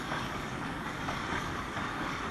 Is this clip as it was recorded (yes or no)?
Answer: no